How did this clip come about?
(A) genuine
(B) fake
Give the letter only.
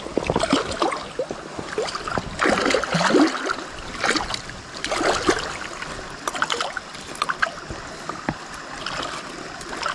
A